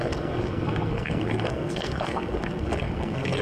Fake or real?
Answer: fake